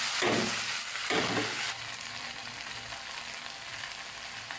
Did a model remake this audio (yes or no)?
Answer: no